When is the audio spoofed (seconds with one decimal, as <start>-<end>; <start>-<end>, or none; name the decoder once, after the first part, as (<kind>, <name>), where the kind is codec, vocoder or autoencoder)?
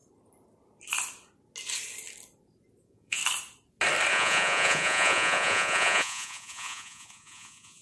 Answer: 2.8-3.2 (vocoder, Vocos); 4.1-7.8